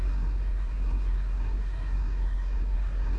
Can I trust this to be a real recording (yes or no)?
no